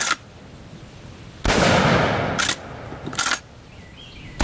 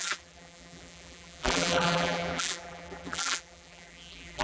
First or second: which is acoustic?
first